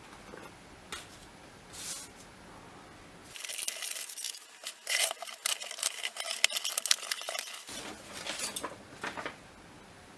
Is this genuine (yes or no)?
yes